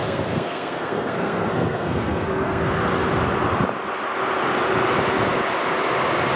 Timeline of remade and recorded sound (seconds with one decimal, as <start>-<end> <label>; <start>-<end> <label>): 0.0-2.7 remade; 2.7-6.4 recorded

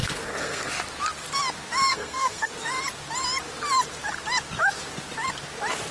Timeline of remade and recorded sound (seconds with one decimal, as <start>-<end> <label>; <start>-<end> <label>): 0.0-0.7 remade; 0.7-1.9 recorded; 1.9-2.5 remade; 2.5-5.9 recorded

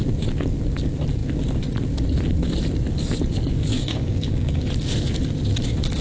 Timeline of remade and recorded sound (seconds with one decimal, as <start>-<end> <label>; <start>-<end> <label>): 0.0-3.7 recorded; 3.7-4.7 remade; 4.7-6.0 recorded

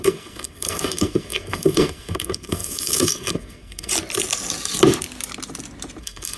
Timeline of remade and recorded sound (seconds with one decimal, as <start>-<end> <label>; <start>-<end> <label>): 0.0-3.9 remade; 3.9-6.0 recorded; 6.0-6.4 remade

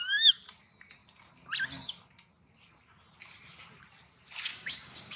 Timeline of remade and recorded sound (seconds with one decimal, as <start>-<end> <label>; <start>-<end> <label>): 0.0-4.5 recorded; 4.5-5.2 remade

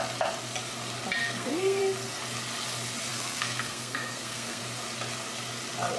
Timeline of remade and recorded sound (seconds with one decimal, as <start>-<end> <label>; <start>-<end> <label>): 0.0-1.2 recorded; 1.2-1.8 remade; 1.8-3.1 recorded; 3.1-4.6 remade; 4.6-6.0 recorded

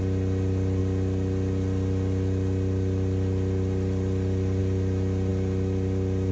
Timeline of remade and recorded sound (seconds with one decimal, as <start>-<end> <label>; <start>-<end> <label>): 0.0-6.3 recorded

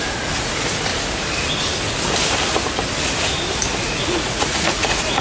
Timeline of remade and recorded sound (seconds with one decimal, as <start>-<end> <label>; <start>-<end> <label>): 0.0-0.9 remade; 0.9-4.0 recorded; 4.0-5.2 remade